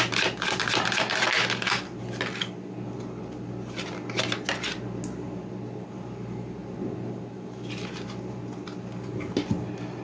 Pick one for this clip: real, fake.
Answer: real